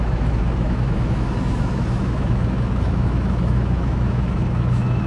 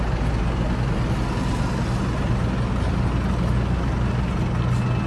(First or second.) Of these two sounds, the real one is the second